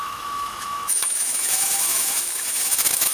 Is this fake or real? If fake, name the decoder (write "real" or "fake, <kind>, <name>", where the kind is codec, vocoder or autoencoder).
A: fake, autoencoder, DAC-VAE